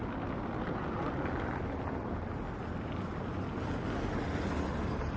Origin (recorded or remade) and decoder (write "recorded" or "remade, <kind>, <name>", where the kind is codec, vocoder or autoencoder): recorded